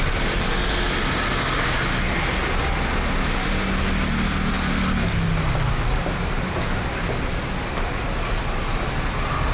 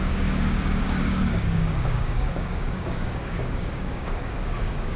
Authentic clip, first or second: first